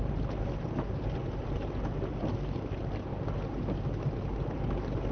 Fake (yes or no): no